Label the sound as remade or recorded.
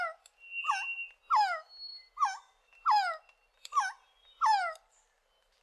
recorded